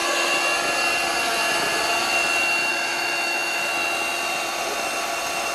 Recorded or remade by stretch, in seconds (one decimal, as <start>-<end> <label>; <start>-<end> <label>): 0.0-2.7 recorded; 2.7-3.7 remade; 3.7-5.5 recorded